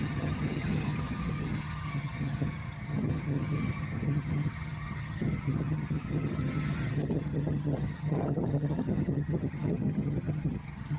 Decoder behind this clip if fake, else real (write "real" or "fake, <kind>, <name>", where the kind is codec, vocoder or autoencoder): fake, vocoder, HiFi-GAN